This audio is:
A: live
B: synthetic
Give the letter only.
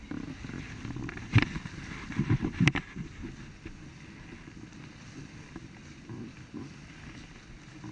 A